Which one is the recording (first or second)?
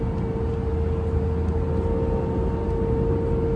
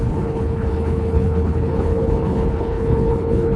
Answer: first